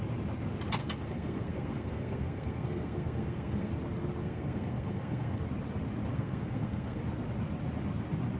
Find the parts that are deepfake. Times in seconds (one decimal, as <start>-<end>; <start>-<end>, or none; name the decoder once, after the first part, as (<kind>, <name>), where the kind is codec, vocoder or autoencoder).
0.8-3.7 (codec, SNAC); 4.2-5.4; 6.1-7.0